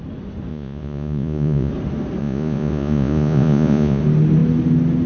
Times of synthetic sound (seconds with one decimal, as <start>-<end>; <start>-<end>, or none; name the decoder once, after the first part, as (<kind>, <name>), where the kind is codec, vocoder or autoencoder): 0.5-1.7 (vocoder, Vocos); 2.2-4.0